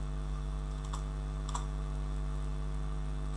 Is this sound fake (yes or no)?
no